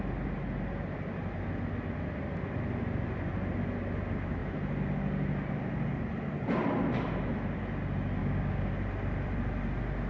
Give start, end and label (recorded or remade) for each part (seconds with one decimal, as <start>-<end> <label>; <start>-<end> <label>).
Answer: 0.0-8.2 recorded; 8.2-8.7 remade; 8.7-10.1 recorded